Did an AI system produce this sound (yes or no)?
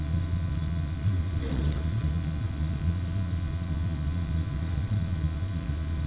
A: yes